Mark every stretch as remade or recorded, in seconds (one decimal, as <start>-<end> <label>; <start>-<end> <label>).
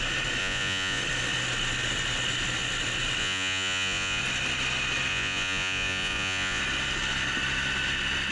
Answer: 0.0-0.4 recorded; 0.4-1.0 remade; 1.0-3.2 recorded; 3.2-4.2 remade; 4.2-5.1 recorded; 5.1-6.6 remade; 6.6-8.3 recorded